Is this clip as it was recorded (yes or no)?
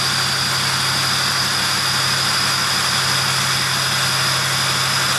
yes